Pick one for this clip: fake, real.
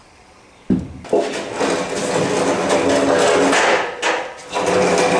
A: real